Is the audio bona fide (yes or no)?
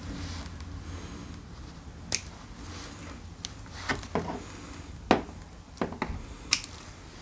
yes